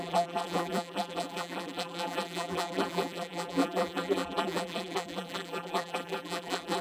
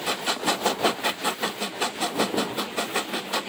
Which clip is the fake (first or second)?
first